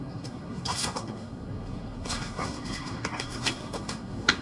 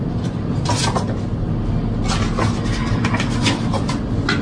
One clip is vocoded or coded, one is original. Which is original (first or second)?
second